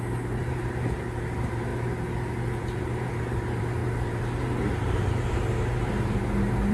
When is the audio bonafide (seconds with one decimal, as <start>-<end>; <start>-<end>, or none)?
1.7-2.6